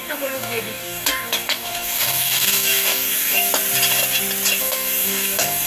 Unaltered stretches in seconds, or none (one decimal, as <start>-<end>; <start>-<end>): 3.5-4.6